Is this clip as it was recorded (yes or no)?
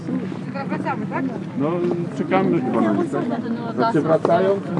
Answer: yes